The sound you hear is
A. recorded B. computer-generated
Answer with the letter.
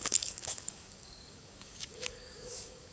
B